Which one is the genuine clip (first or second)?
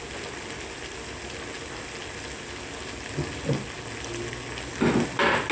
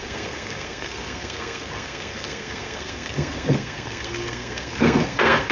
first